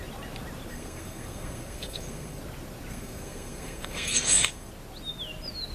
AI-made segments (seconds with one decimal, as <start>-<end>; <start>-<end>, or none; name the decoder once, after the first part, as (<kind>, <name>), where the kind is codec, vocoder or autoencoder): 0.7-2.4 (codec, SNAC); 2.9-4.7